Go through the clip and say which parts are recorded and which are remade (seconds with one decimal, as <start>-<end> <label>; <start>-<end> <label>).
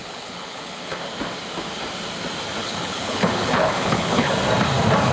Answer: 0.0-1.0 remade; 1.0-2.6 recorded; 2.6-4.3 remade; 4.3-5.1 recorded